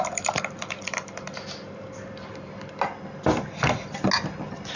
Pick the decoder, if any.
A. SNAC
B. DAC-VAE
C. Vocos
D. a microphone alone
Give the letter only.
D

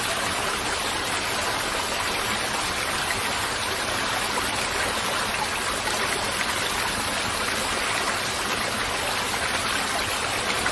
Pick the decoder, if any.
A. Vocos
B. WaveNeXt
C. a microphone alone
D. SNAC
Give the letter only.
C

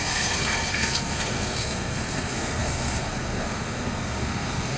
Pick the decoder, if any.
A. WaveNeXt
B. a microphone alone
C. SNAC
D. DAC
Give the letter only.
C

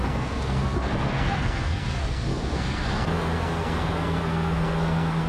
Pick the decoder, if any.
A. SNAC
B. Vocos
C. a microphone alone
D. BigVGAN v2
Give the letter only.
A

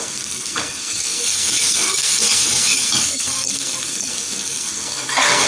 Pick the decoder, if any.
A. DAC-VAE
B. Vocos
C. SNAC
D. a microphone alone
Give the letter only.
C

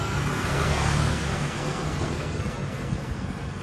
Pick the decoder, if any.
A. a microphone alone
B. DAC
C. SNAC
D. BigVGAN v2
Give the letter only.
C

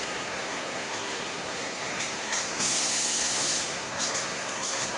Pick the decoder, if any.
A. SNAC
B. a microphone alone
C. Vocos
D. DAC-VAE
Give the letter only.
A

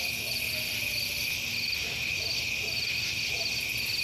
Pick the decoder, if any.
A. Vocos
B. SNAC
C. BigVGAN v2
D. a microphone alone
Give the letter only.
D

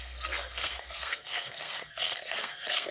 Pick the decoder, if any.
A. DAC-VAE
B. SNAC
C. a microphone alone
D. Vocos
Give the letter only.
B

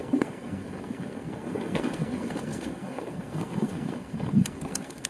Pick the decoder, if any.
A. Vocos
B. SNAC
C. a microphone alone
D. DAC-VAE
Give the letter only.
B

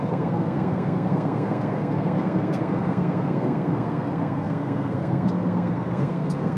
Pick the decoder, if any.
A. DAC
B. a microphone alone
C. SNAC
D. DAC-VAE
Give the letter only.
C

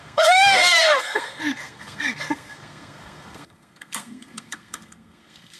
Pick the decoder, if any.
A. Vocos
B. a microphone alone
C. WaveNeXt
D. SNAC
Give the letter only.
D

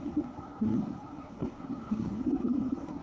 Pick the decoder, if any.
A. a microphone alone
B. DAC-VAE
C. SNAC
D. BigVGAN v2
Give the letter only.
C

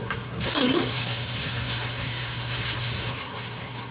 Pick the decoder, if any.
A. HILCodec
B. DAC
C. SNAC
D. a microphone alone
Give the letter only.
C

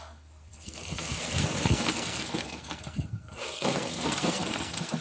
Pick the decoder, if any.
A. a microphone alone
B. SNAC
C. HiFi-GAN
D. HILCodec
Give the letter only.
B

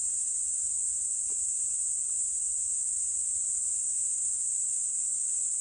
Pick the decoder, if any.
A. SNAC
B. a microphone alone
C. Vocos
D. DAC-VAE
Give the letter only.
B